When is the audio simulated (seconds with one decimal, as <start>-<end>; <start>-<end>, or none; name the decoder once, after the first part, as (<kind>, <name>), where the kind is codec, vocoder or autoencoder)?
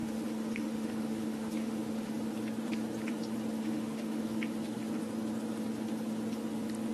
0.0-2.1 (autoencoder, DAC-VAE); 3.6-4.4